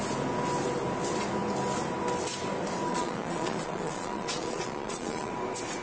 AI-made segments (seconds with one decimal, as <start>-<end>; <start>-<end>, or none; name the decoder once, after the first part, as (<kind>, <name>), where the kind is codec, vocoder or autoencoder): 2.9-5.3 (vocoder, Vocos)